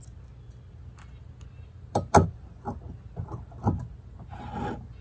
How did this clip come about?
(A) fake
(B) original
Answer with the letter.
B